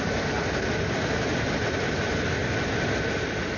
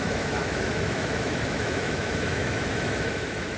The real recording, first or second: first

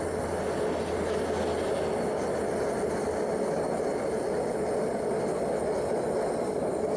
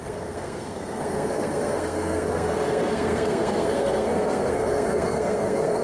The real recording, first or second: first